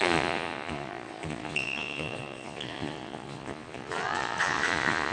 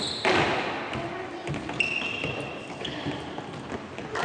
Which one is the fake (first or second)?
first